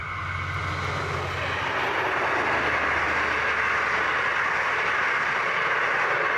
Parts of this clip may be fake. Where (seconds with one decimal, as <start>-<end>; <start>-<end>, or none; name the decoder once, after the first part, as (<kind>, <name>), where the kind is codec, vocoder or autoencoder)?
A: none